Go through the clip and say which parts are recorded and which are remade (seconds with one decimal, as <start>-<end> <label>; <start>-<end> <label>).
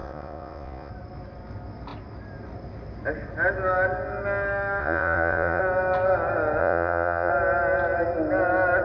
0.0-0.9 remade; 0.9-4.8 recorded; 4.8-5.6 remade; 5.6-6.6 recorded; 6.6-7.3 remade; 7.3-8.8 recorded